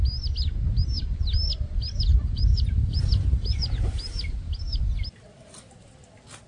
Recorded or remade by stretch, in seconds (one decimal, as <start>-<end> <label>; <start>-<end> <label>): 0.0-2.1 recorded; 2.1-4.8 remade; 4.8-6.5 recorded